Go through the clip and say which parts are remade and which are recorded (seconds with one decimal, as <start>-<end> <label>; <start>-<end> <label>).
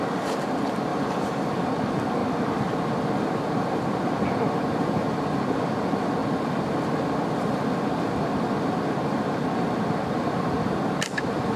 0.0-0.9 recorded; 0.9-1.5 remade; 1.5-11.6 recorded